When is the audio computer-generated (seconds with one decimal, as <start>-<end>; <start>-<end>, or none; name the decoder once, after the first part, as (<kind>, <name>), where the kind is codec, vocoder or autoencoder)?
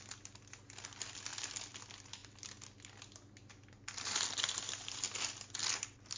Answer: none